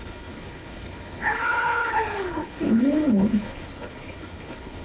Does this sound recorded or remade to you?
remade